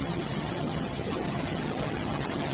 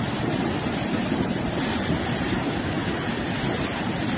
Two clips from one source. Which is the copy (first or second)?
first